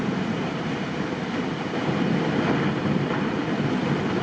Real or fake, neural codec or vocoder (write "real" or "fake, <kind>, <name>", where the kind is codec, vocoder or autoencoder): real